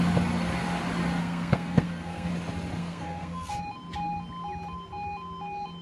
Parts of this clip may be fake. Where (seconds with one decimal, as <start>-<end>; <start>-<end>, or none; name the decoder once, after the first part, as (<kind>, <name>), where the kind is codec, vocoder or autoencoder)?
1.2-2.3 (codec, SNAC); 2.8-3.6

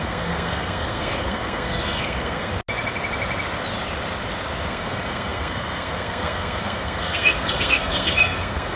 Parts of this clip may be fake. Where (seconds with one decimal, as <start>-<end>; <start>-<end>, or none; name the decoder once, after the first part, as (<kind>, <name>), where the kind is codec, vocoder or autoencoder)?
0.0-2.5 (codec, SNAC); 4.7-8.8